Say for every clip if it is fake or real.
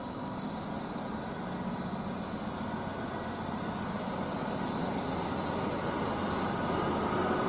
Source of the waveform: real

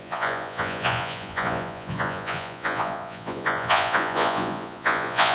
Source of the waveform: fake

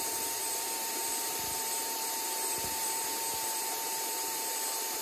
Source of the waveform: fake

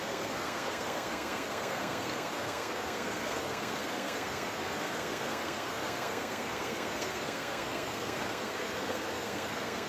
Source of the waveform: fake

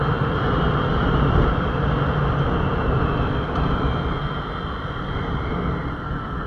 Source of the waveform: real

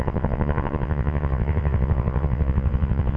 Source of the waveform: fake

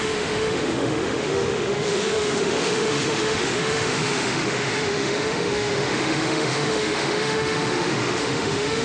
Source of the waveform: fake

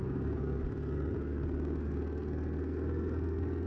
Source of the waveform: fake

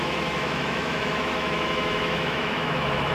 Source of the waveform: fake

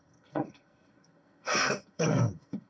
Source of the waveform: fake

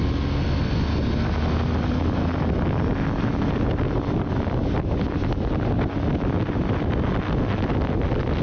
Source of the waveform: real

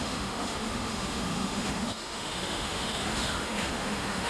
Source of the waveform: fake